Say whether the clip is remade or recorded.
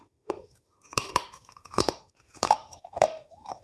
remade